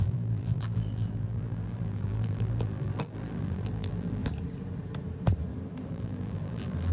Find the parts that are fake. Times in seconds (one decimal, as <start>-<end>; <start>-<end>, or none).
0.0-4.2; 5.9-6.9